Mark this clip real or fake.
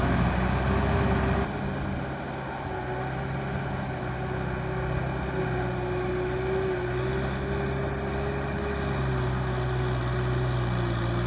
real